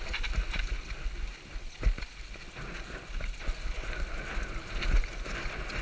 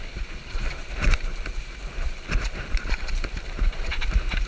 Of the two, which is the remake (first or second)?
second